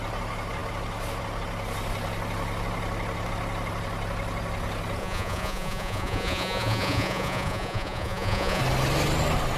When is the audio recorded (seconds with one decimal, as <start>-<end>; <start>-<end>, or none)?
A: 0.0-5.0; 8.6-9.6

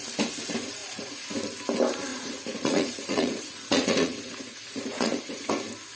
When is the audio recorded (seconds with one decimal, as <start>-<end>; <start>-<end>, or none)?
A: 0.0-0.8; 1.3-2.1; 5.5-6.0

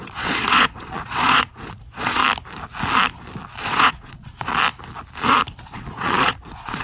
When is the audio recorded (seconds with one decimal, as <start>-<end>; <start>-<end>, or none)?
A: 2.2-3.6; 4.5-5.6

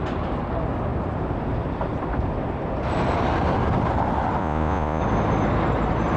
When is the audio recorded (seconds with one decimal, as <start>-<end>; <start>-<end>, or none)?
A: 0.0-4.4; 5.0-6.2

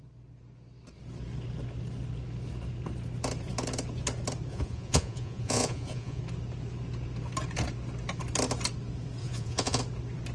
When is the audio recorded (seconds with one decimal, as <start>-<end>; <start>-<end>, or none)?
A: 0.0-4.5; 6.2-9.2; 9.8-10.3